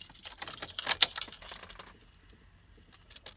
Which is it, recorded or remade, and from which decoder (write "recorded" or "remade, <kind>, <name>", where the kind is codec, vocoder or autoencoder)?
recorded